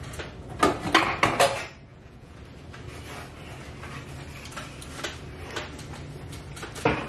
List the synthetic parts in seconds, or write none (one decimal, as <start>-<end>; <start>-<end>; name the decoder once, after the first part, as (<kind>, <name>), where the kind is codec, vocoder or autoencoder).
1.9-2.4 (vocoder, Vocos)